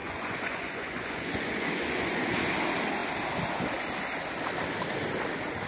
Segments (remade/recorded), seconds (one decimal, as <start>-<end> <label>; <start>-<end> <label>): 0.0-2.3 remade; 2.3-5.7 recorded